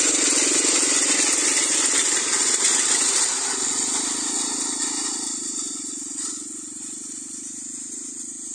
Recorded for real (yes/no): yes